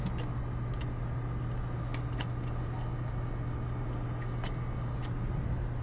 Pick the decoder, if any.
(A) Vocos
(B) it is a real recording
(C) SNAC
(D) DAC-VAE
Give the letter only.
B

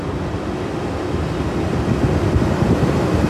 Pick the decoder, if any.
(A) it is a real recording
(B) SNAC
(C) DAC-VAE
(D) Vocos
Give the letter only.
A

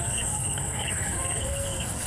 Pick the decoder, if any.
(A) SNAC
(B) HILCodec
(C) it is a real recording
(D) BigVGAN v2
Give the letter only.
A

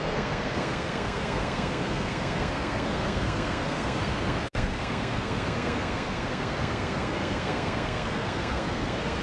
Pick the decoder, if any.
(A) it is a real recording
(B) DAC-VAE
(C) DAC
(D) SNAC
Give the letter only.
D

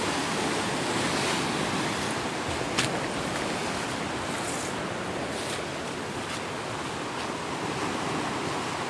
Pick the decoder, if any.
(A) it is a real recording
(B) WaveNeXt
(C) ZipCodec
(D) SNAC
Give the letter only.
A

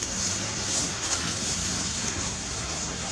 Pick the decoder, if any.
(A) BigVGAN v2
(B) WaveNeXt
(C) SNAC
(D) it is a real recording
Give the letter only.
C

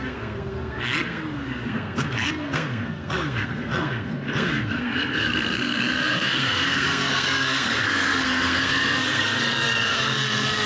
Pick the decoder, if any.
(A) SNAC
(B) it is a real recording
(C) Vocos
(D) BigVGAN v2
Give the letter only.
A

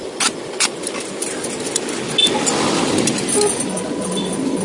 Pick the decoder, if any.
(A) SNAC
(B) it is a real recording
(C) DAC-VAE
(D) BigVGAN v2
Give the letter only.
B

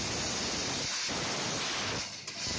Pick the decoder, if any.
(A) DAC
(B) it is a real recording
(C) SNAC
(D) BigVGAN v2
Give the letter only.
B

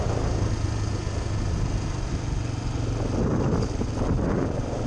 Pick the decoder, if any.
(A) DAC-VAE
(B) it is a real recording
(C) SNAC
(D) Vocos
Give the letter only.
B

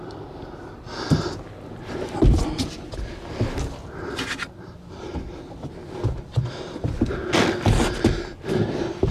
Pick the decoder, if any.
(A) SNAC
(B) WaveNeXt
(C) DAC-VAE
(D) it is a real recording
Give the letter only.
D